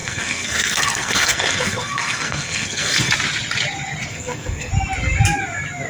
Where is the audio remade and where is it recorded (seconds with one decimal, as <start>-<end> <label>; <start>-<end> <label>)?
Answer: 0.0-3.1 remade; 3.1-4.1 recorded; 4.1-4.7 remade; 4.7-5.9 recorded